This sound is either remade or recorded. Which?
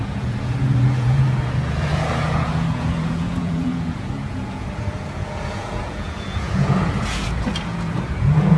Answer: remade